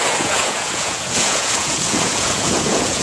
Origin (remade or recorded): remade